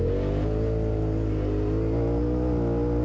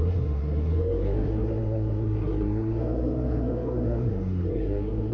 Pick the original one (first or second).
first